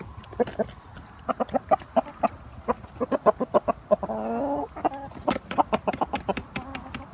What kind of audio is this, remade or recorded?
recorded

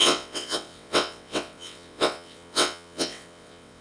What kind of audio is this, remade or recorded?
remade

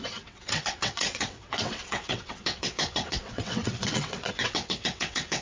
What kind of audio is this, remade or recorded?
remade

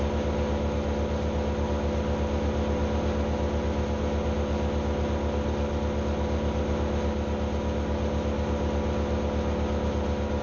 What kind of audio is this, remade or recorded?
recorded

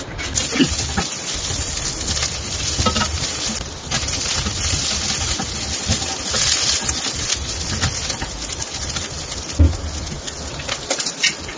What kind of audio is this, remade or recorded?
recorded